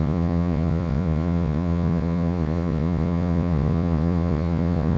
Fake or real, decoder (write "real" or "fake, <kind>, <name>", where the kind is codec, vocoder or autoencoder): fake, vocoder, Vocos